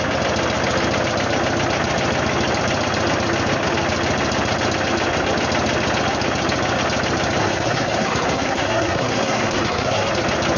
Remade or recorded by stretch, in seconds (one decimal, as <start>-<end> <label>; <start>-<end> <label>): 0.0-7.4 recorded; 7.4-10.1 remade; 10.1-10.6 recorded